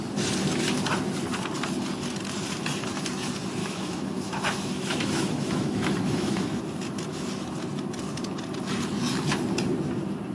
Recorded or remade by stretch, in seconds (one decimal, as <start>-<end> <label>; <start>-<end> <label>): 0.0-3.6 recorded; 3.6-6.6 remade; 6.6-10.3 recorded